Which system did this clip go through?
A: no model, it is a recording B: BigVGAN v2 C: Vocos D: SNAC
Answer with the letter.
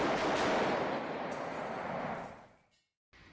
A